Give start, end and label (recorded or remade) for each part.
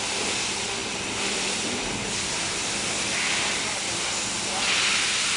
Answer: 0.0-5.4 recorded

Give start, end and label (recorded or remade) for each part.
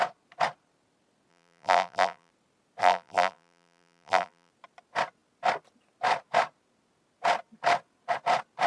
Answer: 0.0-1.3 recorded; 1.3-2.3 remade; 2.3-2.8 recorded; 2.8-4.5 remade; 4.5-8.7 recorded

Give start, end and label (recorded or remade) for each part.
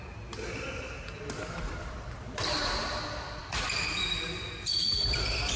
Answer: 0.0-5.6 recorded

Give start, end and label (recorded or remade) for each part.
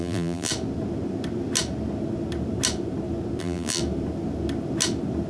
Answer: 0.0-0.5 remade; 0.5-3.4 recorded; 3.4-3.8 remade; 3.8-5.3 recorded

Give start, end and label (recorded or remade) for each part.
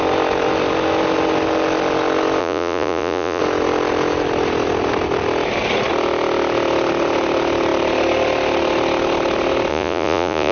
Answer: 0.0-2.4 recorded; 2.4-3.4 remade; 3.4-9.7 recorded; 9.7-10.5 remade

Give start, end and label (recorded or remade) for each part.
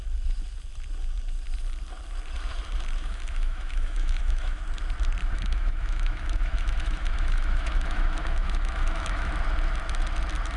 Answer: 0.0-3.0 recorded; 3.0-4.6 remade; 4.6-5.2 recorded; 5.2-9.3 remade; 9.3-10.6 recorded